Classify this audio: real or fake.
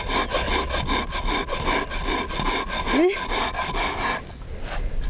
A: real